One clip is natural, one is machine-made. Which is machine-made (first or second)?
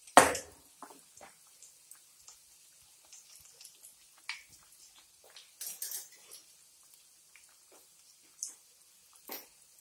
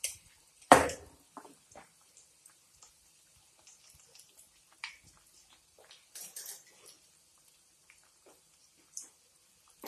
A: second